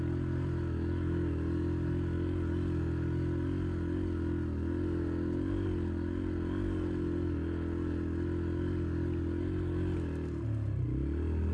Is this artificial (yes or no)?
no